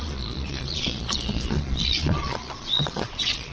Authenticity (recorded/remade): remade